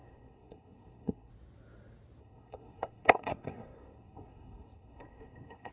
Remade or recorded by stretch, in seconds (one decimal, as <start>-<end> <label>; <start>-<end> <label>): 0.0-1.3 remade; 1.3-2.2 recorded; 2.2-5.7 remade

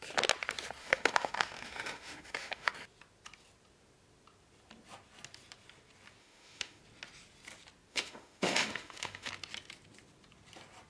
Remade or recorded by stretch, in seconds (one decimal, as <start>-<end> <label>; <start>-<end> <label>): 0.0-0.8 recorded; 0.8-2.7 remade; 2.7-6.2 recorded; 6.2-6.8 remade; 6.8-7.9 recorded; 7.9-9.3 remade; 9.3-10.9 recorded

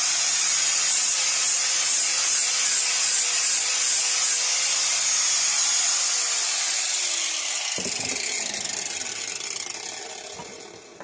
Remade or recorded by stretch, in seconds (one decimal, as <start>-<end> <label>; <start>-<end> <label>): 0.0-1.2 remade; 1.2-11.0 recorded

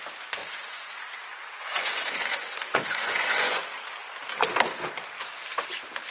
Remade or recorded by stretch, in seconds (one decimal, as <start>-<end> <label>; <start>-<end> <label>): 0.0-0.4 recorded; 0.4-0.9 remade; 0.9-1.3 recorded; 1.3-3.6 remade; 3.6-6.1 recorded

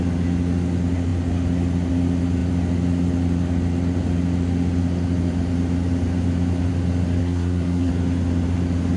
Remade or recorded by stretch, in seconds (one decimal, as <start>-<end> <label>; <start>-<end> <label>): 0.0-7.2 recorded; 7.2-7.9 remade; 7.9-9.0 recorded

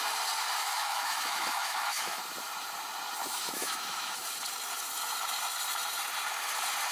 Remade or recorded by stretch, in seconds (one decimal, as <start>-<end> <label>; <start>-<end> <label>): 0.0-0.6 recorded; 0.6-2.2 remade; 2.2-3.3 recorded; 3.3-4.2 remade; 4.2-6.9 recorded